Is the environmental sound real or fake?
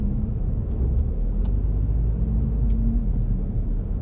real